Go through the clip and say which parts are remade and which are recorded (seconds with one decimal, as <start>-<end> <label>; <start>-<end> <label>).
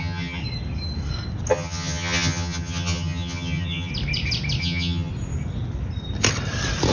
0.0-0.4 remade; 0.4-1.5 recorded; 1.5-3.9 remade; 3.9-4.6 recorded; 4.6-5.1 remade; 5.1-6.9 recorded